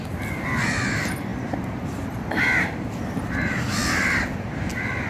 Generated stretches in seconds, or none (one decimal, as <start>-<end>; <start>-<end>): none

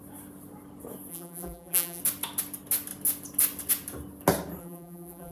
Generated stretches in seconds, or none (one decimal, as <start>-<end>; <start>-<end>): 1.1-2.0; 4.6-5.3

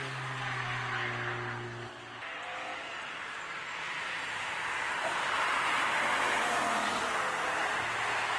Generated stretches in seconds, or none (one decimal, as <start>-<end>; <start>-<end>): none

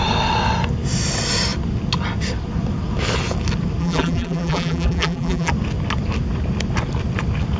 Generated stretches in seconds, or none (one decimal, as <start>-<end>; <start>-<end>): 3.8-5.5

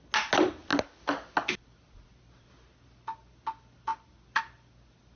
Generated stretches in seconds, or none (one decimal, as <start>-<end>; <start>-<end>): none